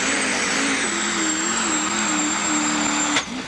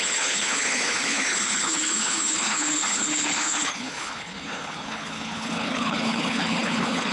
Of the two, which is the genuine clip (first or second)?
first